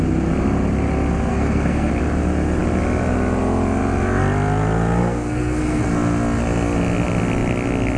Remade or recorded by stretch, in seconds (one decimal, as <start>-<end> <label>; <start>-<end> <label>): 0.0-1.3 recorded; 1.3-1.9 remade; 1.9-5.0 recorded; 5.0-5.8 remade; 5.8-8.0 recorded